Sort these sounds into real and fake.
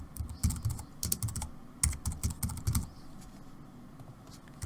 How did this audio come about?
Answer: real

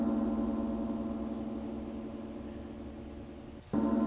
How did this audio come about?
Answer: real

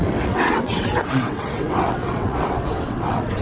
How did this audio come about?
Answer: fake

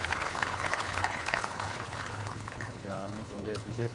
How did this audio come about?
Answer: fake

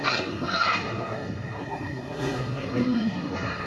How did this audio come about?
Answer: fake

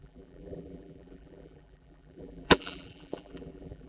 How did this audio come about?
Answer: fake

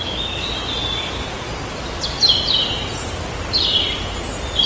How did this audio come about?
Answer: real